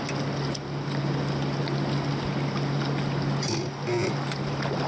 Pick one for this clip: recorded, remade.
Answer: recorded